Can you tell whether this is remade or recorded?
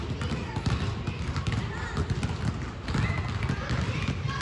recorded